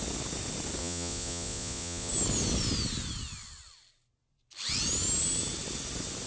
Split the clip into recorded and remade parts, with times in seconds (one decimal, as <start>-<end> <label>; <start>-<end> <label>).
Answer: 0.0-0.8 recorded; 0.8-2.1 remade; 2.1-6.3 recorded